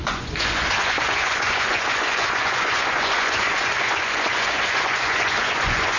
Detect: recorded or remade remade